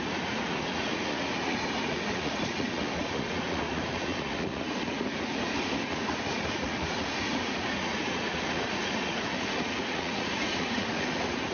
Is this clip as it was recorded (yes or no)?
no